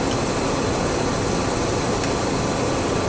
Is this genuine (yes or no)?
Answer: yes